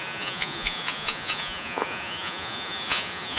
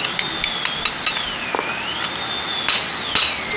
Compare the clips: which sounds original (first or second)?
second